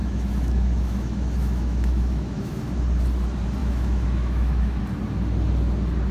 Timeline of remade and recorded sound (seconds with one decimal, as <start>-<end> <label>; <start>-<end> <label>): 0.0-2.8 remade; 2.8-3.6 recorded; 3.6-4.8 remade; 4.8-6.1 recorded